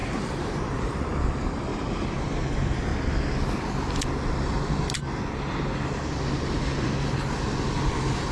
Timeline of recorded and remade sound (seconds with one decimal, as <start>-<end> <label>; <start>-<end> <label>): 0.0-1.7 remade; 1.7-2.5 recorded; 2.5-2.9 remade; 2.9-7.9 recorded; 7.9-8.3 remade